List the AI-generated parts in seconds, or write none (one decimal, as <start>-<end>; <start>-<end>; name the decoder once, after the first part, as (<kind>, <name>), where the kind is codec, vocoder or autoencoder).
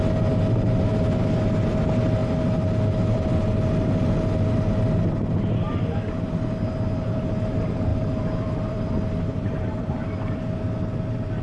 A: 7.9-10.2 (vocoder, BigVGAN v2)